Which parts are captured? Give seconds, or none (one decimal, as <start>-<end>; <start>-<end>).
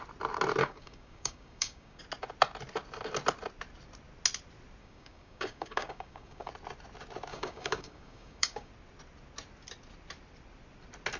0.0-0.6; 2.0-4.8; 6.5-7.3; 8.7-11.2